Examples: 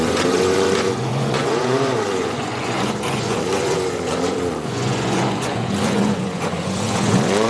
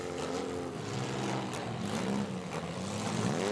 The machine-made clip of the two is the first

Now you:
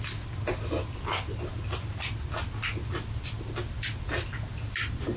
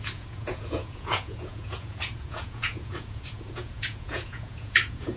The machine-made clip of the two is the second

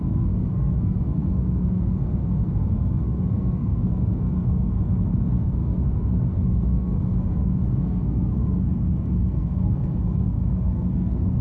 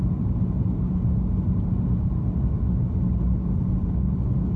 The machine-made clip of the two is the first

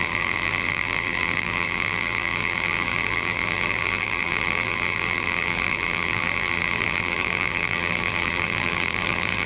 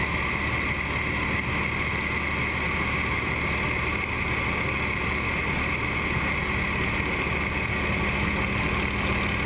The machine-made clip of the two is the first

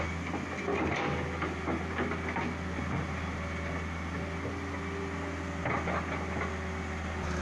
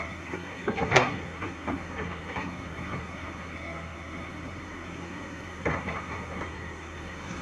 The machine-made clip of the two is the second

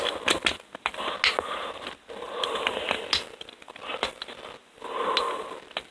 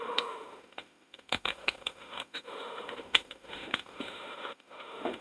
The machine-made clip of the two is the second